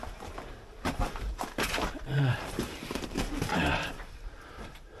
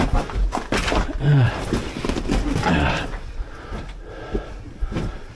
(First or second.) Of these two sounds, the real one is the second